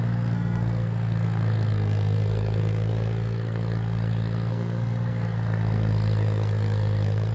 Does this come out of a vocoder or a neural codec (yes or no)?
yes